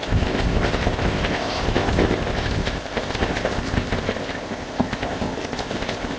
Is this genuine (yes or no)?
no